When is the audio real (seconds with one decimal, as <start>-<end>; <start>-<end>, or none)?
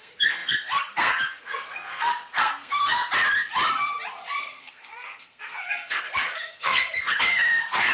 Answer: 3.0-4.4